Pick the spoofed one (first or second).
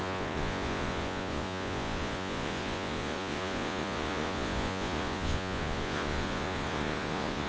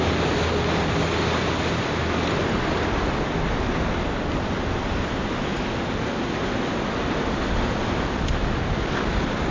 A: first